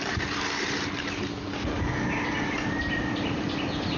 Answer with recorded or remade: recorded